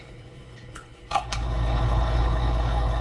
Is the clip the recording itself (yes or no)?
no